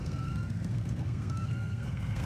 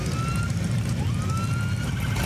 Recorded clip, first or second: second